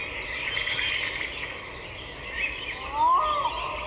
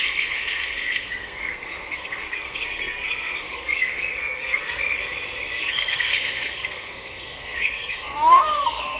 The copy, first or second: second